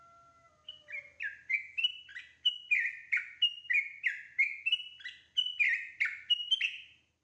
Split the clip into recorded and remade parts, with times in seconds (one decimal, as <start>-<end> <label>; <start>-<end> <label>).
0.0-7.2 recorded